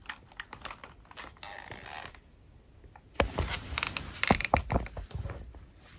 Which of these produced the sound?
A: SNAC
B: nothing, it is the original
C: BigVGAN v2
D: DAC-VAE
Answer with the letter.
B